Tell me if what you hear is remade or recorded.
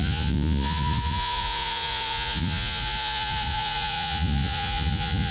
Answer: remade